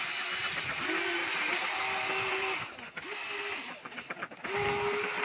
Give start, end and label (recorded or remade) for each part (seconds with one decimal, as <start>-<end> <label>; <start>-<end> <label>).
0.0-5.2 recorded

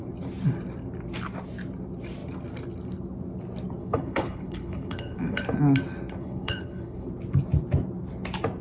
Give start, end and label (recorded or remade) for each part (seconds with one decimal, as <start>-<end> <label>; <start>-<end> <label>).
0.0-3.8 recorded; 3.8-5.4 remade; 5.4-6.2 recorded; 6.2-7.1 remade; 7.1-8.6 recorded